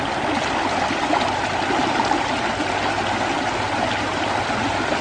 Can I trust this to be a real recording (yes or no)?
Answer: yes